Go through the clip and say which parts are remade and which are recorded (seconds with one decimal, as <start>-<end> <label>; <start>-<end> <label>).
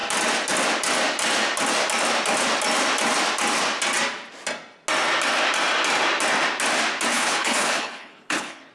0.0-7.1 recorded; 7.1-8.7 remade